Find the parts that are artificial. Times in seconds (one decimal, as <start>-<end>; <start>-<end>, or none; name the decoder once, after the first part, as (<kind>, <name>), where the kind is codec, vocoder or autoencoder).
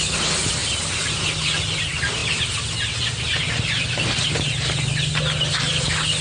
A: none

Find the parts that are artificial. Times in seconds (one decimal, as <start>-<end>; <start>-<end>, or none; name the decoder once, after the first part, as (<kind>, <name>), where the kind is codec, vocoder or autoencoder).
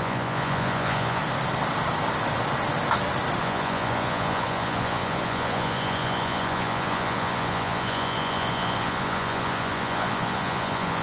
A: 0.0-1.2 (vocoder, Vocos); 3.4-11.0